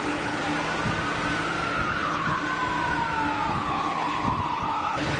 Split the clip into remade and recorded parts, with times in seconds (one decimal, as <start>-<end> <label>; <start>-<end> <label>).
0.0-0.4 remade; 0.4-1.9 recorded; 1.9-2.4 remade; 2.4-3.5 recorded; 3.5-5.2 remade